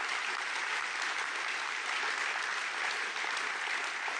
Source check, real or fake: real